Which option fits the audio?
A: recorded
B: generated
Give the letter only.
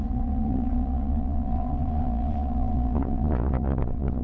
B